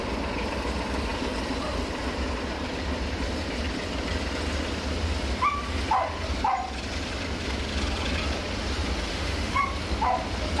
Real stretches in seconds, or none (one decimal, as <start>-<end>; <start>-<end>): 0.0-9.1; 9.6-10.6